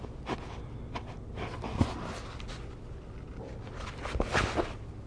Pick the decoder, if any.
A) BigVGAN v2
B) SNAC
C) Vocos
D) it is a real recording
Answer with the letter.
D